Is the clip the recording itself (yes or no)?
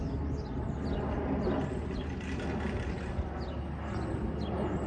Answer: yes